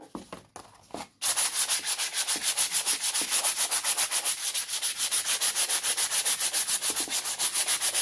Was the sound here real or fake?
real